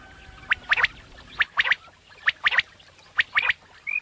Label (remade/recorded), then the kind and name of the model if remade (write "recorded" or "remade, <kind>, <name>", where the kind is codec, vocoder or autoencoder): recorded